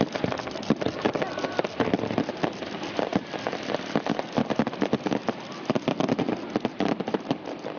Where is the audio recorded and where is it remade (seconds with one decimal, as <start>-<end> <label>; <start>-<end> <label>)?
0.0-7.8 recorded